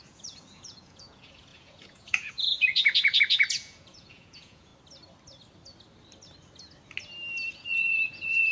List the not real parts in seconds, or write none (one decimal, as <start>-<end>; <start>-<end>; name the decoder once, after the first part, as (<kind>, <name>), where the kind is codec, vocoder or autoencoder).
0.0-4.7 (vocoder, Vocos); 7.5-8.5